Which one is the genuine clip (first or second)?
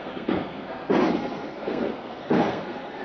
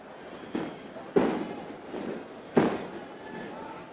second